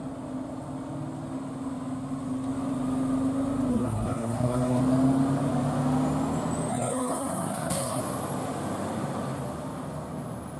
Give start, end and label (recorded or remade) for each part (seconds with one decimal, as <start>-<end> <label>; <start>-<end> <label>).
0.0-3.7 recorded; 3.7-4.8 remade; 4.8-6.7 recorded; 6.7-8.0 remade; 8.0-10.6 recorded